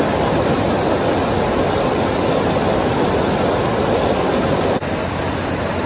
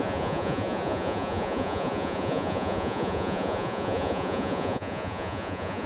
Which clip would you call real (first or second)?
first